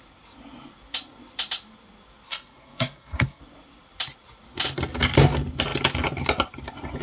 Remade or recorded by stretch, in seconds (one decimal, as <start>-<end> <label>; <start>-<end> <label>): 0.0-2.3 recorded; 2.3-3.4 remade; 3.4-7.0 recorded